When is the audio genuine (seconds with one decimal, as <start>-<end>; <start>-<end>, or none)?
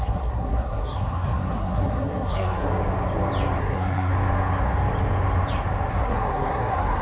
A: 2.7-3.6; 4.1-5.9